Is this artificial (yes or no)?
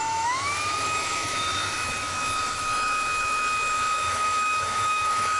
yes